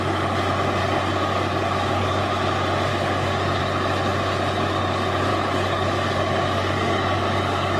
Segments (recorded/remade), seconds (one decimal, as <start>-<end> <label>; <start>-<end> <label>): 0.0-0.8 recorded; 0.8-2.2 remade; 2.2-2.9 recorded; 2.9-3.6 remade; 3.6-5.3 recorded; 5.3-7.8 remade